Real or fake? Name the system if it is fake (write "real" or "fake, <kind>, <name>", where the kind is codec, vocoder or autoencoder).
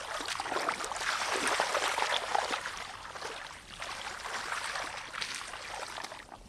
real